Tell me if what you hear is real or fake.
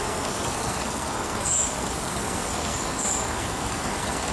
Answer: fake